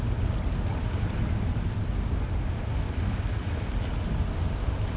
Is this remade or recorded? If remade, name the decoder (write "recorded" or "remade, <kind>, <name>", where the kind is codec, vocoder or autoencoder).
recorded